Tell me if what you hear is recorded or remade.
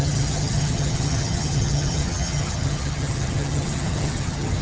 remade